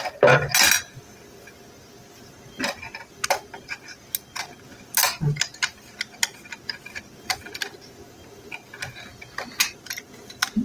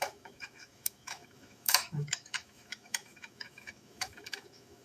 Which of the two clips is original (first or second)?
first